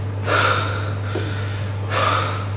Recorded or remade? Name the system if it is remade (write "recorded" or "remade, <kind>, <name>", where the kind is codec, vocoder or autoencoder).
recorded